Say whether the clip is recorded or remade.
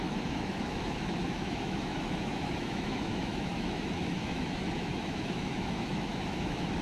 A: remade